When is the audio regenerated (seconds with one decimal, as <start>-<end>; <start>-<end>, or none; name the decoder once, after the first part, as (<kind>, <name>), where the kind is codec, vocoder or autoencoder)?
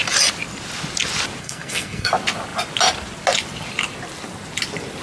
1.4-2.1 (codec, SNAC)